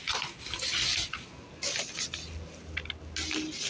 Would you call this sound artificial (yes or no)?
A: no